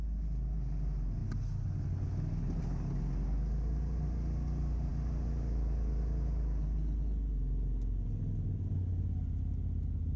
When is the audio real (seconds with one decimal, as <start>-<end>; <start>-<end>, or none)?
0.0-10.2